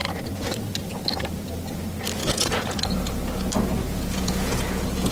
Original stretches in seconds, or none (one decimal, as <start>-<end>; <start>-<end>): 0.0-2.2; 3.1-3.8